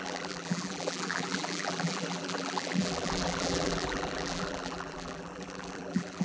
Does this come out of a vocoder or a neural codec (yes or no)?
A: yes